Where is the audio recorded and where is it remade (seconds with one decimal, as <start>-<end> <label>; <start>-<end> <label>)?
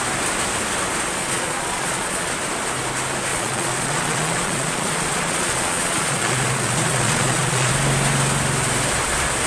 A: 0.0-1.2 recorded; 1.2-2.3 remade; 2.3-3.3 recorded; 3.3-7.7 remade; 7.7-9.5 recorded